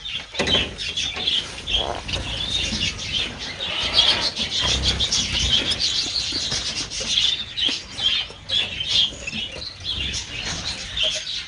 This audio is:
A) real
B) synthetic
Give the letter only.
A